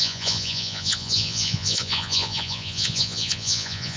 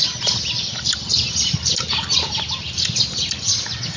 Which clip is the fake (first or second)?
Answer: first